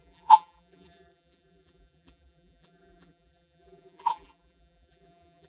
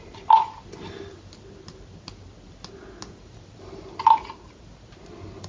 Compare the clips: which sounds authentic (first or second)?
second